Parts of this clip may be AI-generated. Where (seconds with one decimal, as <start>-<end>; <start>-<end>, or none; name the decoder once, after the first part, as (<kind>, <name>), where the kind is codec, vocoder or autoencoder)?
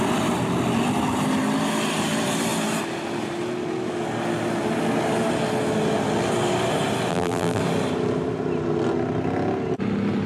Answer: 7.1-7.6 (vocoder, BigVGAN v2)